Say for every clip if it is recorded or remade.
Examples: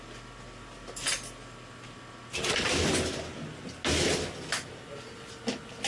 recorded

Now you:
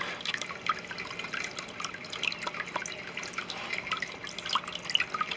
recorded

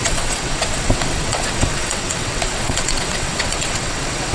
remade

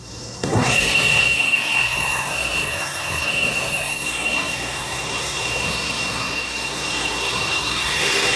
remade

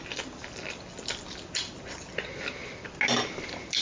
recorded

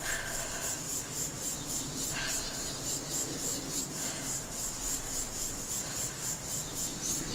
recorded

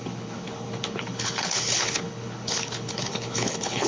remade